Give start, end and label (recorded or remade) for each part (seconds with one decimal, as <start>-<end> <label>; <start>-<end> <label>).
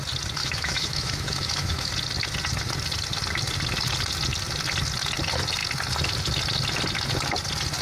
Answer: 0.0-0.4 recorded; 0.4-1.9 remade; 1.9-7.8 recorded